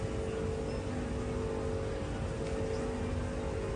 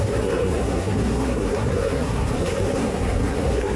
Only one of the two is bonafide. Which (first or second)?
first